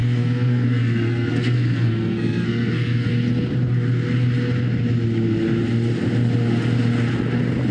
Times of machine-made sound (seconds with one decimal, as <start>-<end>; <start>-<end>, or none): 0.0-3.1